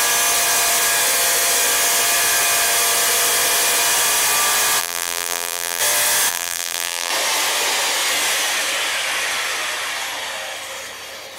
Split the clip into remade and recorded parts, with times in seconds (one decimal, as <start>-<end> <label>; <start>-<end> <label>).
0.0-4.8 recorded; 4.8-5.8 remade; 5.8-6.3 recorded; 6.3-7.1 remade; 7.1-11.4 recorded